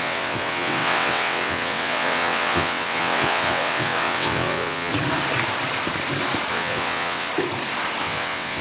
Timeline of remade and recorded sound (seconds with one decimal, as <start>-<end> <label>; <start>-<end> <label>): 0.0-4.9 remade; 4.9-6.5 recorded; 6.5-7.3 remade; 7.3-8.0 recorded; 8.0-8.6 remade

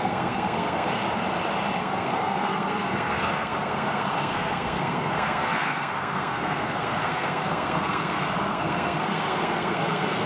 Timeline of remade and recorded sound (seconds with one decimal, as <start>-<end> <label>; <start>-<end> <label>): 0.0-1.0 remade; 1.0-1.8 recorded; 1.8-10.3 remade

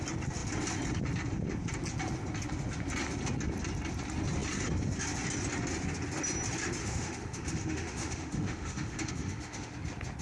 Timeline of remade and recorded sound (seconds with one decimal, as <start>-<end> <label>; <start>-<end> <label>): 0.0-6.8 recorded; 6.8-9.7 remade; 9.7-10.2 recorded

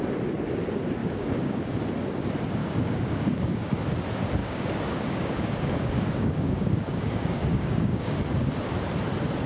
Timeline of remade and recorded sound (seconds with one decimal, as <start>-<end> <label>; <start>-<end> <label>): 0.0-1.0 recorded; 1.0-1.8 remade; 1.8-2.6 recorded; 2.6-3.7 remade; 3.7-4.4 recorded; 4.4-8.5 remade; 8.5-9.5 recorded

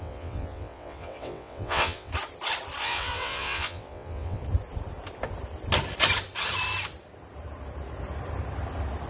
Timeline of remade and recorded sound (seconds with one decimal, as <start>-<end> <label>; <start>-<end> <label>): 0.0-2.1 remade; 2.1-2.8 recorded; 2.8-4.4 remade; 4.4-9.1 recorded

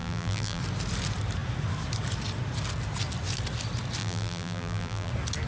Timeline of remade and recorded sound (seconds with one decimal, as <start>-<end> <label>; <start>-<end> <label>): 0.0-0.6 remade; 0.6-4.0 recorded; 4.0-5.1 remade; 5.1-5.5 recorded

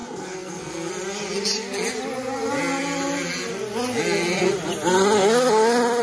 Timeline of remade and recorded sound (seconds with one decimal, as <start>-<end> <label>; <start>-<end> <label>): 0.0-0.9 remade; 0.9-6.0 recorded

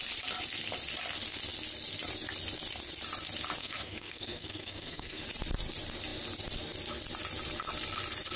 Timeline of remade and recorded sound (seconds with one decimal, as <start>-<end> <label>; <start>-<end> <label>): 0.0-3.6 recorded; 3.6-5.2 remade; 5.2-8.4 recorded